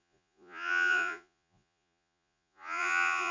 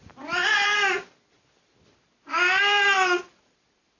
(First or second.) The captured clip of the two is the second